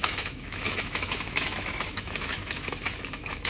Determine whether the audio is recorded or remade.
remade